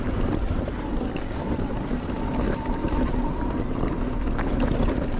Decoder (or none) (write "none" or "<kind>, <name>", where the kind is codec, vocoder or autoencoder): none